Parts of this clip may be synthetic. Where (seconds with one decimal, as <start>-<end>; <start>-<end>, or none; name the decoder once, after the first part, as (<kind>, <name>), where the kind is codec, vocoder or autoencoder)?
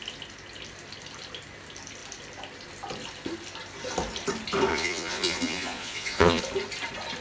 4.7-6.4 (vocoder, Vocos)